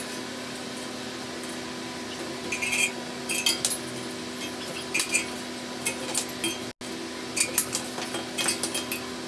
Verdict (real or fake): real